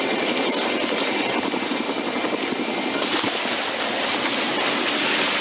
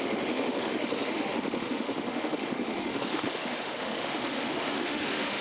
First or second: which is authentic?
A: first